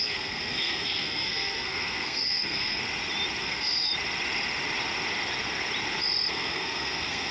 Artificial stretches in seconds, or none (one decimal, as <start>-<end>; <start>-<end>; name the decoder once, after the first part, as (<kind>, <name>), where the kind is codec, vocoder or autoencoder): 0.0-2.8 (codec, SNAC); 3.4-3.9; 6.3-7.3